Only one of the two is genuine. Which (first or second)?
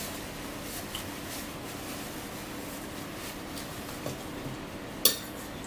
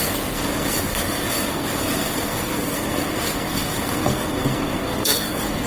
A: first